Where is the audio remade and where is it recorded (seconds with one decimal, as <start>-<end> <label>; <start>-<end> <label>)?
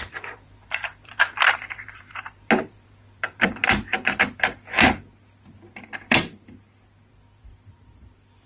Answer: 0.0-3.6 remade; 3.6-7.1 recorded; 7.1-8.5 remade